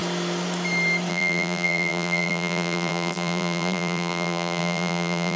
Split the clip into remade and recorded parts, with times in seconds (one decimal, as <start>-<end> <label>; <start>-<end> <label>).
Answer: 0.0-1.1 recorded; 1.1-5.4 remade